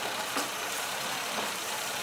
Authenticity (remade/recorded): remade